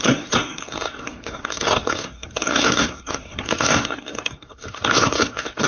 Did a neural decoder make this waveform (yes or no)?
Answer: yes